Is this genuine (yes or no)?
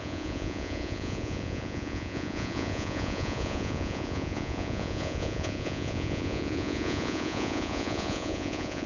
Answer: no